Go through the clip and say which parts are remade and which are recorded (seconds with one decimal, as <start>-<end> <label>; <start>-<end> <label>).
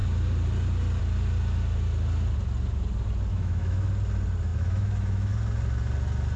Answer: 0.0-3.3 recorded; 3.3-3.9 remade; 3.9-4.5 recorded; 4.5-5.3 remade; 5.3-6.4 recorded